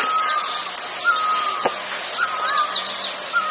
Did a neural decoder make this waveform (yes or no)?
no